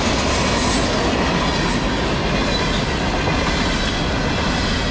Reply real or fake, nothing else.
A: real